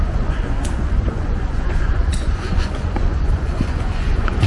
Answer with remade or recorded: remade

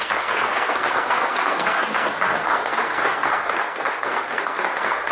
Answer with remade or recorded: remade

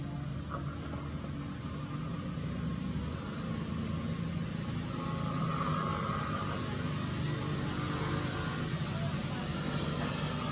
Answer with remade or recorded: recorded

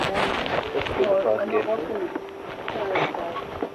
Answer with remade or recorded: recorded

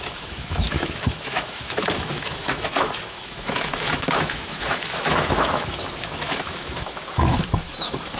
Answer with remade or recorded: remade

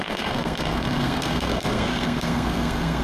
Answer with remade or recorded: remade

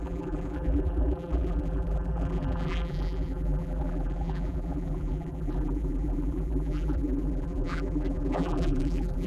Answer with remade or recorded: remade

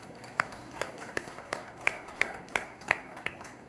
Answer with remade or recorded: remade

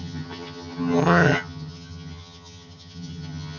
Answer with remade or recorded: remade